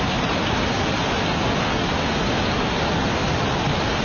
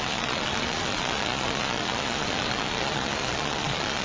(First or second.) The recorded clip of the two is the first